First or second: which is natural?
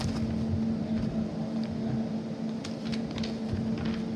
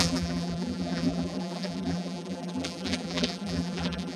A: first